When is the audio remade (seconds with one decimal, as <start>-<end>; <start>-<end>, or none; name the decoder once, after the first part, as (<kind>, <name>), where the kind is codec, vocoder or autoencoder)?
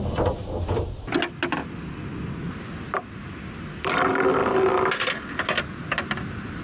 none